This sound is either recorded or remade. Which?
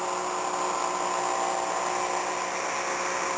recorded